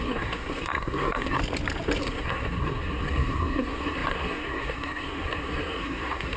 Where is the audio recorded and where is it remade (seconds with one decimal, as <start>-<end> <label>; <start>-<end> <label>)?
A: 0.0-1.4 remade; 1.4-2.0 recorded; 2.0-6.4 remade